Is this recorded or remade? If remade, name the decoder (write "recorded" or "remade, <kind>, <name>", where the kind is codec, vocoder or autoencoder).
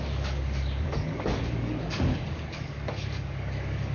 remade, codec, DAC